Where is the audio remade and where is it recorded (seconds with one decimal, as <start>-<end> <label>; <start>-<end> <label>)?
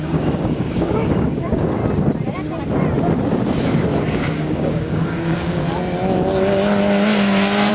0.0-1.8 remade; 1.8-4.1 recorded; 4.1-5.6 remade; 5.6-7.7 recorded